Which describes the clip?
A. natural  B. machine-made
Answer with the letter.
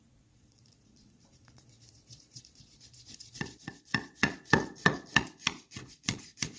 B